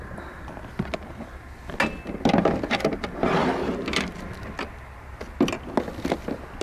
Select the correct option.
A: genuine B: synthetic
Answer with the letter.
A